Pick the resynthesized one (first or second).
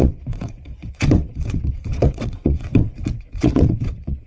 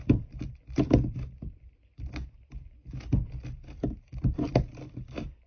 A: first